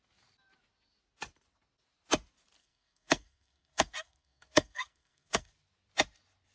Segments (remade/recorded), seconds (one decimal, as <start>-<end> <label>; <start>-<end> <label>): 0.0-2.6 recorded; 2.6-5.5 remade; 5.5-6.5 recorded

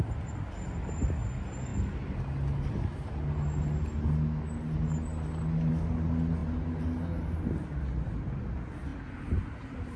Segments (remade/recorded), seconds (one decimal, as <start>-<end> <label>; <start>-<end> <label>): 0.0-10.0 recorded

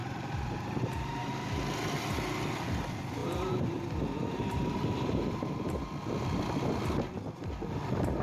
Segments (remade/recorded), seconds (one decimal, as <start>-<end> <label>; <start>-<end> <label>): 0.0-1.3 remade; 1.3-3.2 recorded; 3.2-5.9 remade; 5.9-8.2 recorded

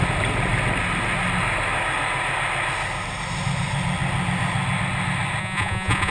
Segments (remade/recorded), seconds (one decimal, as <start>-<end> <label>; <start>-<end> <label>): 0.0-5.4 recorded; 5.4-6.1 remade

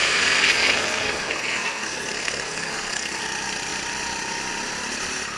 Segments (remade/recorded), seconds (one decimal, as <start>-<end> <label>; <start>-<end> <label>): 0.0-3.2 remade; 3.2-5.4 recorded

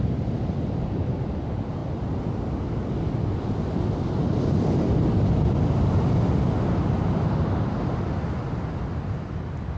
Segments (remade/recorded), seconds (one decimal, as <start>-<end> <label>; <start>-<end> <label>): 0.0-9.8 recorded

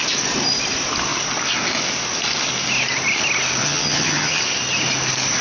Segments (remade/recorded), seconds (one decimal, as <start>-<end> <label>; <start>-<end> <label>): 0.0-3.6 recorded; 3.6-4.4 remade; 4.4-5.4 recorded